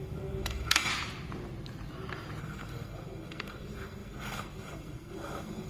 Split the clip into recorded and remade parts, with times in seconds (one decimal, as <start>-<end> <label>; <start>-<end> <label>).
0.0-0.9 remade; 0.9-2.4 recorded; 2.4-5.7 remade